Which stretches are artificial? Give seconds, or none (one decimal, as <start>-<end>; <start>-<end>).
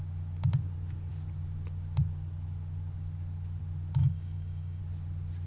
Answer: 4.0-4.8